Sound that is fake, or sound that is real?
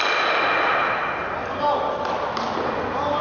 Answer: real